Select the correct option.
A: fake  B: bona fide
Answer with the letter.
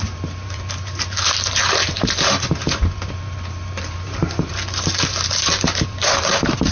A